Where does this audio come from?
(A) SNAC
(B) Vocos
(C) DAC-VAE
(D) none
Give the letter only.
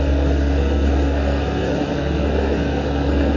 A